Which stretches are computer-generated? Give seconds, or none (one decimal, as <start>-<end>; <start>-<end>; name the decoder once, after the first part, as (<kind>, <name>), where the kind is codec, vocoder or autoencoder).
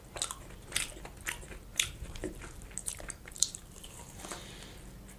1.7-2.4 (vocoder, BigVGAN v2); 2.8-4.2